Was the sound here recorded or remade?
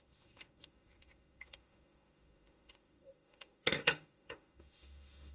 remade